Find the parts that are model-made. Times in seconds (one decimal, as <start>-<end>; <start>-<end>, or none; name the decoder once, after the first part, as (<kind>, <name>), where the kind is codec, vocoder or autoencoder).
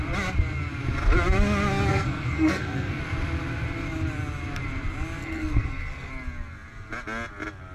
1.9-3.0 (codec, SNAC); 5.2-6.1